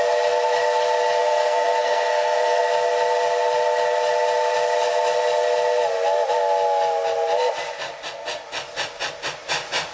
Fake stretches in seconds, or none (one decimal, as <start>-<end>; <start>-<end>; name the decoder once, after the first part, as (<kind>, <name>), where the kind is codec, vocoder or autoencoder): 1.2-2.6 (codec, SNAC)